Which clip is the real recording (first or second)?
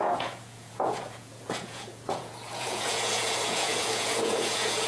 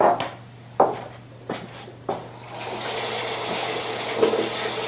second